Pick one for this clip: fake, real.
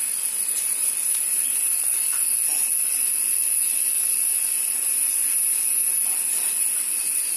real